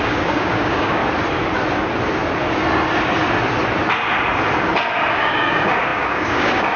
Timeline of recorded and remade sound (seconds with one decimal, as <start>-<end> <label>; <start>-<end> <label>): 0.0-1.0 remade; 1.0-5.1 recorded; 5.1-6.8 remade